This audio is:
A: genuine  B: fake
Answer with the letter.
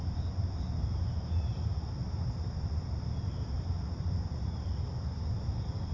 A